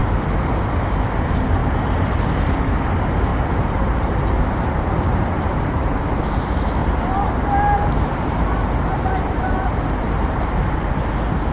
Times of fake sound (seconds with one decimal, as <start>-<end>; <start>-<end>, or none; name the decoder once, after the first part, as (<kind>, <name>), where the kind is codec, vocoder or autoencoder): 1.6-2.7 (vocoder, BigVGAN v2); 3.3-6.0; 6.8-10.9